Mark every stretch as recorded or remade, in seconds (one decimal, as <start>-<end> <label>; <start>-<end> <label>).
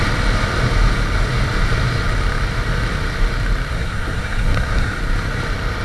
0.0-3.7 recorded; 3.7-5.0 remade; 5.0-5.8 recorded